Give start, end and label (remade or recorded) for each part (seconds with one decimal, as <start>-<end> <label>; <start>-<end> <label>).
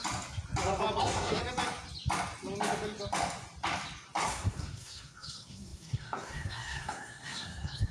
0.0-1.0 recorded; 1.0-1.4 remade; 1.4-4.2 recorded; 4.2-7.9 remade